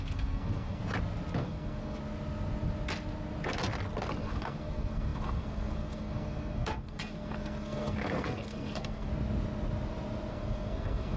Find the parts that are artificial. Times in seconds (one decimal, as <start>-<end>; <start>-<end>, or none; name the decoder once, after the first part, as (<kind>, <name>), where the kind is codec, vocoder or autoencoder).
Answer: 0.0-0.8 (codec, SNAC); 1.4-2.0; 4.2-9.1; 10.3-11.2